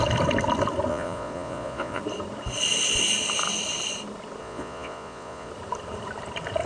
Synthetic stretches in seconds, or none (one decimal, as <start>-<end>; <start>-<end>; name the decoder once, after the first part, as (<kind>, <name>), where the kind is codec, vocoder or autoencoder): 0.9-2.0 (vocoder, Vocos); 4.4-5.5